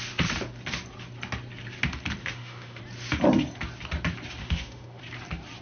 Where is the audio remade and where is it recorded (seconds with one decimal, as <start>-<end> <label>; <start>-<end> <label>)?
0.0-2.2 recorded; 2.2-2.8 remade; 2.8-4.4 recorded; 4.4-5.0 remade; 5.0-5.6 recorded